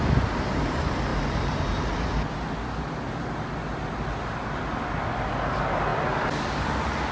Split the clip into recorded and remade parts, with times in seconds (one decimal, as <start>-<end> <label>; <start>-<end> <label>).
0.0-1.1 remade; 1.1-4.5 recorded; 4.5-7.1 remade